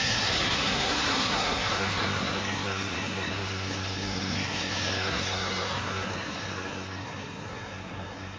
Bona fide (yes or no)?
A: no